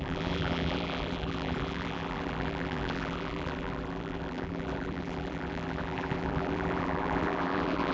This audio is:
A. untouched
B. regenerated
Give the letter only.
B